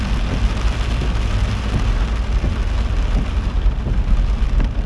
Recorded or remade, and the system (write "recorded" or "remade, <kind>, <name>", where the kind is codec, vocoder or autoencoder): recorded